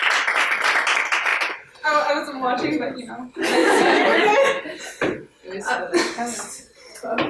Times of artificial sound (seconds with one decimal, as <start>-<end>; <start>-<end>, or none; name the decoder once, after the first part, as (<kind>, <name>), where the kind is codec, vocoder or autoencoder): 3.6-4.6 (autoencoder, DAC-VAE)